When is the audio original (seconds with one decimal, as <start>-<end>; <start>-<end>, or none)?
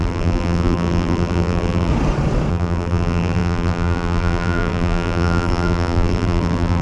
1.9-2.5